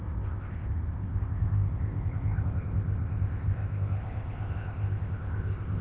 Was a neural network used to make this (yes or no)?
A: yes